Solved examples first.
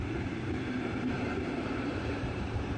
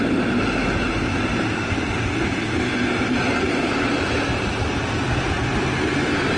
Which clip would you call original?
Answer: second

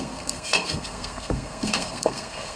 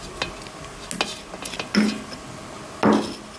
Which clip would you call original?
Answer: second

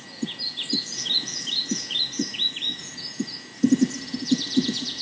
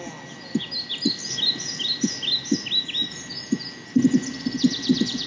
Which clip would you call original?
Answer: second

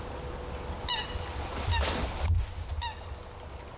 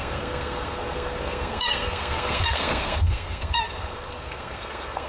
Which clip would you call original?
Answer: first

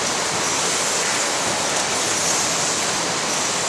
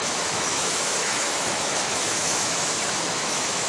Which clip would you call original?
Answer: first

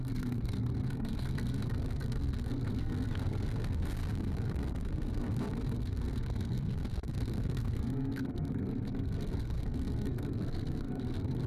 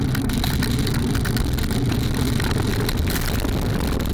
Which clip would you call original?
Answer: second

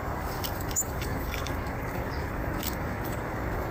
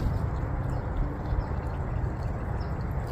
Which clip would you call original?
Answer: second